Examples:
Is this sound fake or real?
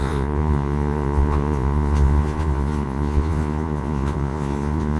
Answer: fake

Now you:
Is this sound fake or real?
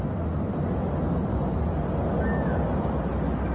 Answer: real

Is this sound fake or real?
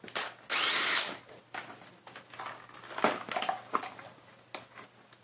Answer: real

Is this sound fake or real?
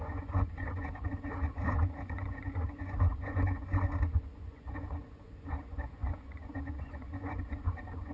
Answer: fake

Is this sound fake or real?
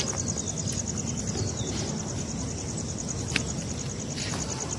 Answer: real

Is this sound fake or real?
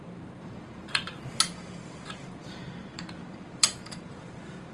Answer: fake